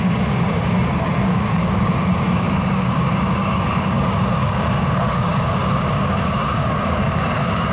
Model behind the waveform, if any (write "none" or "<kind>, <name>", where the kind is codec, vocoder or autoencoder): codec, DAC